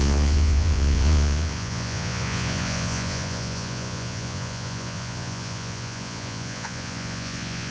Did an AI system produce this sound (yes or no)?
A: yes